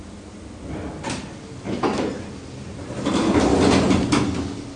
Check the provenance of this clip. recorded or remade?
recorded